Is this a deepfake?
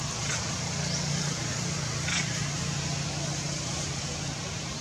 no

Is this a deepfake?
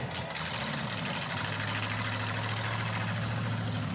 no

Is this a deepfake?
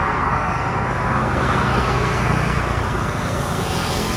yes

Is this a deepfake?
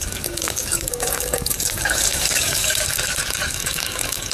yes